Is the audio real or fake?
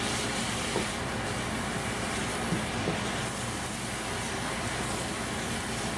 real